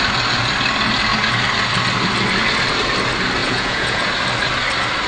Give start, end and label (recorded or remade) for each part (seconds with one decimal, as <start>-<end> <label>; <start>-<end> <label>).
0.0-3.4 recorded; 3.4-4.1 remade; 4.1-5.1 recorded